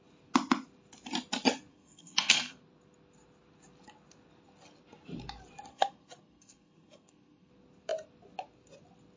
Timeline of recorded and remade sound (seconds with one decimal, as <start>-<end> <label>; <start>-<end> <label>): 0.0-1.7 recorded; 1.7-2.5 remade; 2.5-5.7 recorded; 5.7-7.5 remade; 7.5-9.2 recorded